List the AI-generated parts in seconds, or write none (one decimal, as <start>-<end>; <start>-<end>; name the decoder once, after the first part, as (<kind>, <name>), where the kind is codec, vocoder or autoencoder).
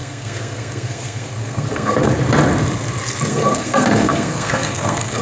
0.0-2.1 (codec, SNAC); 3.3-5.2